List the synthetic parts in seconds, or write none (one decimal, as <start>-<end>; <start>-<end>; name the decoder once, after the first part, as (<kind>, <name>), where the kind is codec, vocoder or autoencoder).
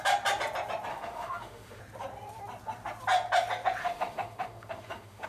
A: 0.9-1.8 (autoencoder, DAC-VAE); 3.8-5.3